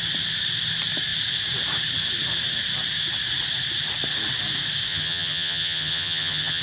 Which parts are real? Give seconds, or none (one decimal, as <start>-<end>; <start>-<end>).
0.0-4.9